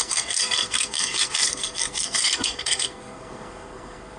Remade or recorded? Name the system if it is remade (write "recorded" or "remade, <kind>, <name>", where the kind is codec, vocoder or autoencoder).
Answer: remade, codec, SNAC